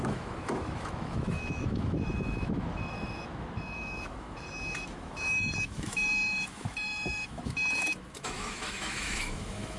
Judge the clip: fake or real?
fake